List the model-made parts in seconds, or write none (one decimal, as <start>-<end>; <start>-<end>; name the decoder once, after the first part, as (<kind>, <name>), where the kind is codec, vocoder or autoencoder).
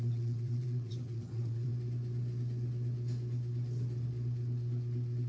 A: 0.0-1.7 (vocoder, WaveNeXt)